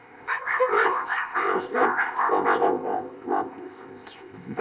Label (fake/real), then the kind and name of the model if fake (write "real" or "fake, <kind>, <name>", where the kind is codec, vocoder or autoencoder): fake, codec, ZipCodec